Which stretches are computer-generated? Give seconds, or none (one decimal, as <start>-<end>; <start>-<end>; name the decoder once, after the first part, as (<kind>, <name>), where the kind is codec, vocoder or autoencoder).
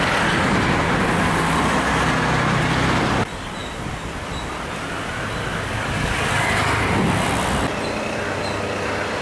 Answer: 5.5-6.3 (vocoder, BigVGAN v2)